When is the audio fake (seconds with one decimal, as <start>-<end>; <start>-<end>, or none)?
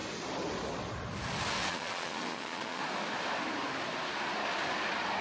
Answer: 1.7-2.8